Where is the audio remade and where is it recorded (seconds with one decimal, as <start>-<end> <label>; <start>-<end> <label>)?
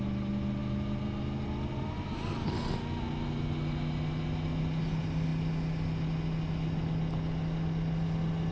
0.0-8.5 recorded